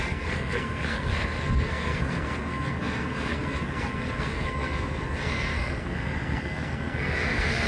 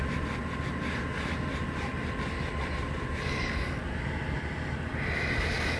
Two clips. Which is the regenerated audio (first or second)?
first